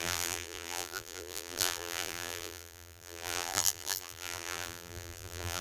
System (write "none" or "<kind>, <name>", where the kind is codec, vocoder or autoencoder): vocoder, BigVGAN v2